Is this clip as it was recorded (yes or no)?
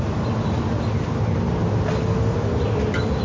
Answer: yes